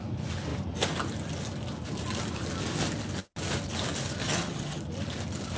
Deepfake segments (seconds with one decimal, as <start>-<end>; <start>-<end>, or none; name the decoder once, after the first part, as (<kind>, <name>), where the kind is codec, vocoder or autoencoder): 4.2-4.8 (vocoder, HiFi-GAN)